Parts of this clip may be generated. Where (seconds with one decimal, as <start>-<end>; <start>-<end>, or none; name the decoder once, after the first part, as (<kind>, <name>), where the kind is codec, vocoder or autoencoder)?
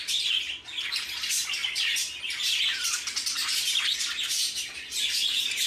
1.6-5.0 (vocoder, BigVGAN v2)